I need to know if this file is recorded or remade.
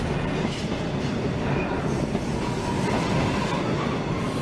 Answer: recorded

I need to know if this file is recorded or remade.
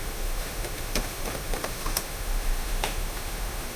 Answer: remade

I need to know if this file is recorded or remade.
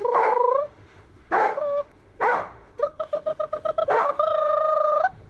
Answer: remade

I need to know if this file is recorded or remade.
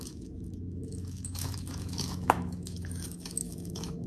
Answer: remade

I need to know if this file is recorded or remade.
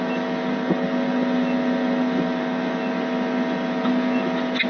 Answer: recorded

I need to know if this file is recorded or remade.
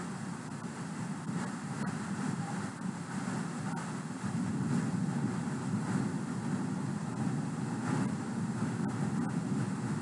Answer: recorded